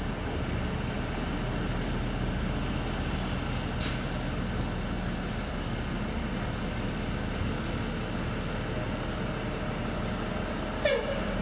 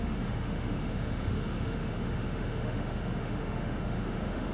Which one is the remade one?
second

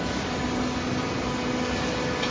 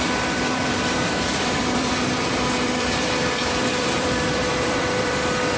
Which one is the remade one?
second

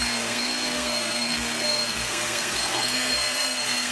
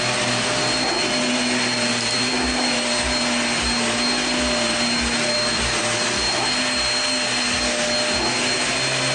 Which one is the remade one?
first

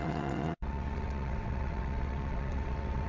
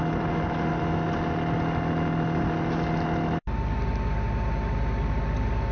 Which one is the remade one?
first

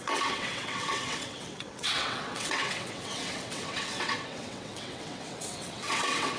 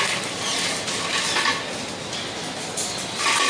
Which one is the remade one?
first